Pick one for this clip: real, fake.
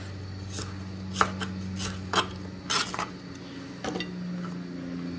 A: real